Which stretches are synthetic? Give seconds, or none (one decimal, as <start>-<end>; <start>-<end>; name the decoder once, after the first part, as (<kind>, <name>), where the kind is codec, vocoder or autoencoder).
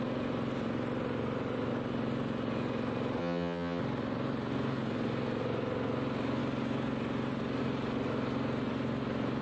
3.2-3.8 (vocoder, HiFi-GAN)